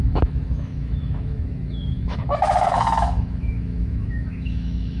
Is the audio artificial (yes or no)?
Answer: yes